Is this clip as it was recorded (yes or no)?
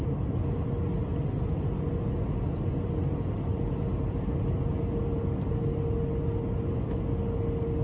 yes